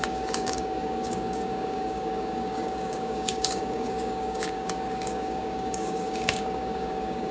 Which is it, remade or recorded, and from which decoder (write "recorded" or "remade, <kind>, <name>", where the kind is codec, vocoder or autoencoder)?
remade, codec, DAC